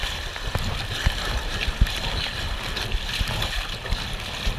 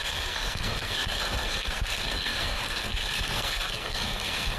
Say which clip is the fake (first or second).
second